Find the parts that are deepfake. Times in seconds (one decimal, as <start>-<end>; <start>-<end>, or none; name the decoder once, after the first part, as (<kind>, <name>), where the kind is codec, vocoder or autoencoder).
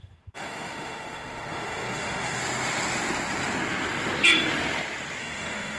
0.0-2.4 (autoencoder, DAC-VAE); 5.2-5.8